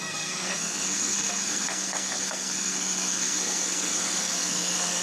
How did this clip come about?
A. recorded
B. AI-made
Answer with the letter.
B